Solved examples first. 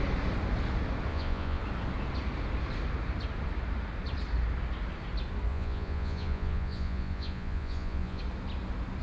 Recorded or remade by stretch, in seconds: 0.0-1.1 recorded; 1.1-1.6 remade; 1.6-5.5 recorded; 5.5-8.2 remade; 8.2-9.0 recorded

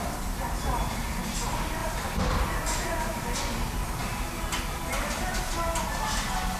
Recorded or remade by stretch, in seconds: 0.0-1.8 recorded; 1.8-3.4 remade; 3.4-6.6 recorded

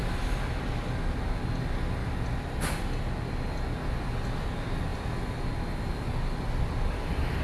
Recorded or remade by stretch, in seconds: 0.0-7.4 recorded

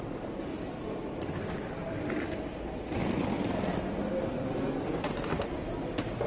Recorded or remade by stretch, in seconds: 0.0-0.5 recorded; 0.5-1.1 remade; 1.1-3.7 recorded; 3.7-4.9 remade; 4.9-6.3 recorded

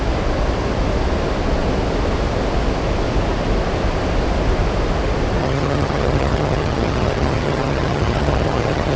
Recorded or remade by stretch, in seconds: 0.0-5.4 recorded; 5.4-9.0 remade

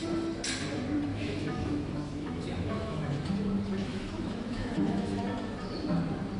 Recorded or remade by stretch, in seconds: 0.0-1.1 recorded; 1.1-3.2 remade; 3.2-3.8 recorded; 3.8-5.2 remade; 5.2-6.4 recorded

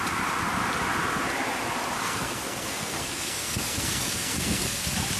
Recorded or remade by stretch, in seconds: 0.0-2.0 recorded; 2.0-4.8 remade; 4.8-5.2 recorded